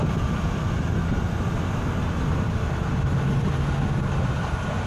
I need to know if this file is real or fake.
real